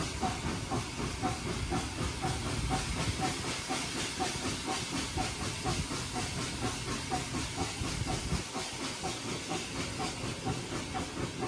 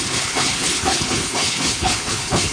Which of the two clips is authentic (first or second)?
first